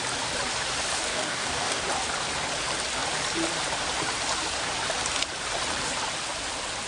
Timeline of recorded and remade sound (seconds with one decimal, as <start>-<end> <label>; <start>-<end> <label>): 0.0-1.1 recorded; 1.1-1.8 remade; 1.8-6.9 recorded